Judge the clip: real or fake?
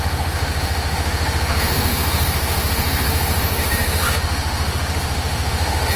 fake